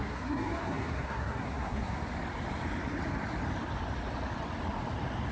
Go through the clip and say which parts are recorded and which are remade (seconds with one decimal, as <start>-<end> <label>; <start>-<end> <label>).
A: 0.0-2.0 remade; 2.0-5.3 recorded